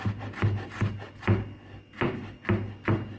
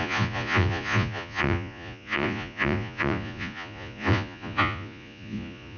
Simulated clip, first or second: second